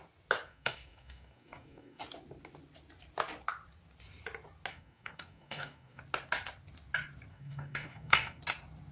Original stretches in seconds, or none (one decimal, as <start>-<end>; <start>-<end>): 0.0-0.5; 2.0-4.7; 6.0-7.3; 8.4-8.9